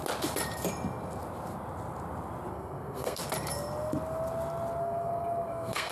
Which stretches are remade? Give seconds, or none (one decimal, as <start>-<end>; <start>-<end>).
2.5-3.2; 4.8-5.9